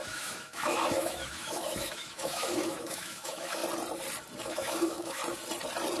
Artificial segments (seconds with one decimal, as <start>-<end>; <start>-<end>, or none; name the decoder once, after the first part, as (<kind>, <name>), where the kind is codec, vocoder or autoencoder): 0.0-3.6 (autoencoder, DAC-VAE); 4.4-5.2